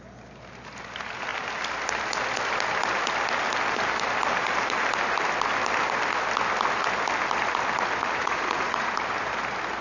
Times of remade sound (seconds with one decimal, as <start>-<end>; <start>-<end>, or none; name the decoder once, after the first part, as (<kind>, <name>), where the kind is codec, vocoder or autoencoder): 8.2-8.9 (vocoder, Vocos)